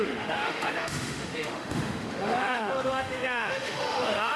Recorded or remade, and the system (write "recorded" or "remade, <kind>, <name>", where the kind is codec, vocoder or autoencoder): remade, autoencoder, DAC-VAE